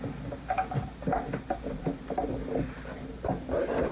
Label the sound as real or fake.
real